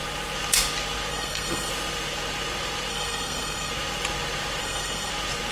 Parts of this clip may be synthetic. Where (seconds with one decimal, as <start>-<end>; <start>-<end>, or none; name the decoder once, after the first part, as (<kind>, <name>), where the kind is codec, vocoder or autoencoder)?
1.1-1.7 (codec, SNAC); 2.9-3.7; 4.6-5.1